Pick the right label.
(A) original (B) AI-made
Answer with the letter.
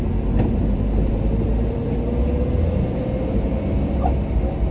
A